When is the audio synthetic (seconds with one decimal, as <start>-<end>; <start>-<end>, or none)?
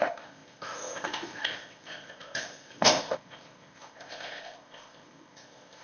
0.0-5.8